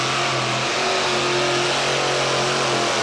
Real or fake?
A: real